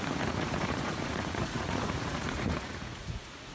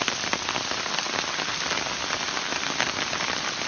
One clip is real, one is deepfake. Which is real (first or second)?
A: second